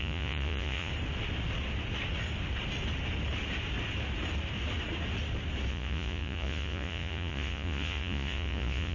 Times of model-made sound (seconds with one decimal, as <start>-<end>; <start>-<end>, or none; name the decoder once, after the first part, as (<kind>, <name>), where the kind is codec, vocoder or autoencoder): 0.0-0.9 (vocoder, Vocos); 5.7-8.9